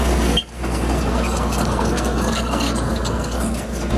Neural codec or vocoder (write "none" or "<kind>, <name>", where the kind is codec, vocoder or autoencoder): codec, SNAC